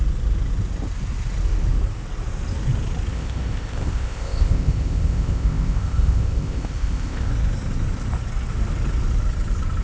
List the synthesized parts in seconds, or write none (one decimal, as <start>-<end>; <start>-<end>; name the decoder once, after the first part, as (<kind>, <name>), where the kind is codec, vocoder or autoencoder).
3.1-7.3 (codec, ZipCodec)